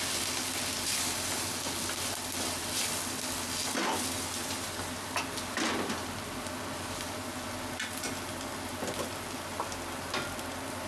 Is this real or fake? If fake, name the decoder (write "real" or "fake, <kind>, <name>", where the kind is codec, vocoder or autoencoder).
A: real